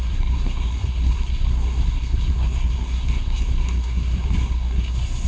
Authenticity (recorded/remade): remade